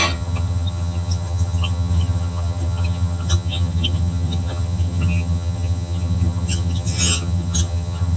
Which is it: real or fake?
fake